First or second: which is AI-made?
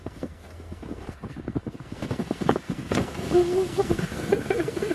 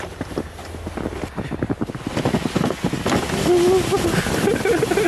first